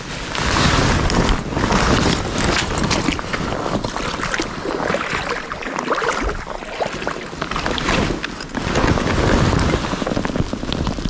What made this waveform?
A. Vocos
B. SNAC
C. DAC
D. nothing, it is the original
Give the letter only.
D